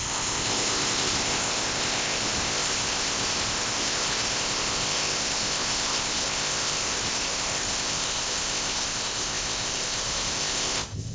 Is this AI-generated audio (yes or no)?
yes